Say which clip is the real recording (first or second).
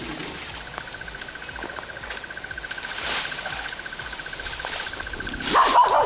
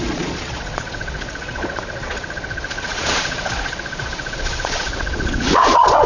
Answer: first